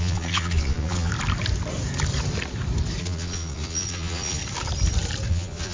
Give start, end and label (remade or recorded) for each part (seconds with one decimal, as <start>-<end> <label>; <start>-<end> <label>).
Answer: 0.0-1.1 remade; 1.1-3.0 recorded; 3.0-4.4 remade; 4.4-5.3 recorded; 5.3-5.7 remade